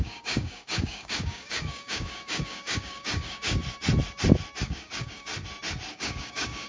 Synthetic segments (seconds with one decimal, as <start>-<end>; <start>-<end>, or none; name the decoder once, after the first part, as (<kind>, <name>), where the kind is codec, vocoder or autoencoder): 0.0-3.6 (codec, DAC); 4.6-5.3; 5.9-6.7